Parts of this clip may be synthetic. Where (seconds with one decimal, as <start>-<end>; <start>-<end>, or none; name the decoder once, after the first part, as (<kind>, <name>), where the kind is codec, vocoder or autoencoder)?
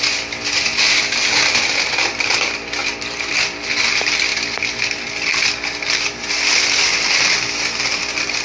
none